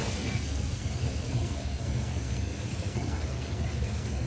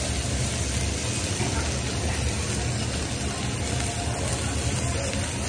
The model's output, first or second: first